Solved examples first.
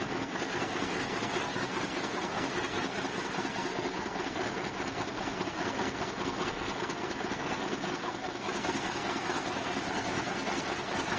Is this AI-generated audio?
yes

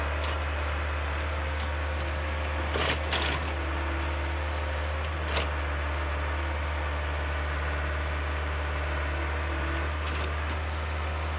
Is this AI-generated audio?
no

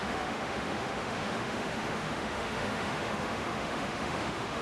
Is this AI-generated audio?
yes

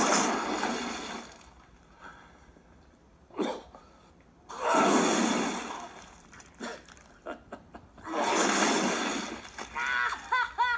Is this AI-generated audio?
no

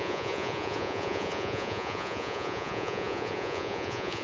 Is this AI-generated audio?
yes